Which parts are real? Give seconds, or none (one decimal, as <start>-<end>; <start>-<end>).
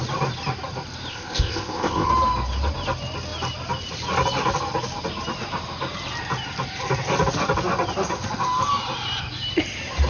0.0-1.1; 2.1-10.1